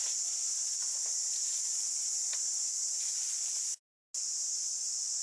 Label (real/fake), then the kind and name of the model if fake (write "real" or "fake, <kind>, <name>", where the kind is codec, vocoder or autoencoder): real